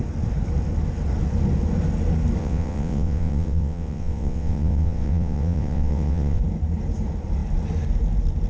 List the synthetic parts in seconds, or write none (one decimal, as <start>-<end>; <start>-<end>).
2.4-6.4